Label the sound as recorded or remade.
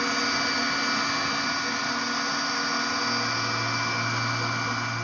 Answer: recorded